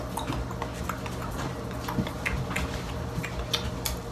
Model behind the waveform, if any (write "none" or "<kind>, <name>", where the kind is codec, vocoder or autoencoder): none